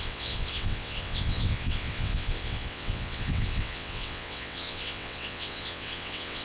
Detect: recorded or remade remade